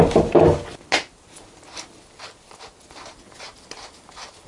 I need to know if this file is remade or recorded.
recorded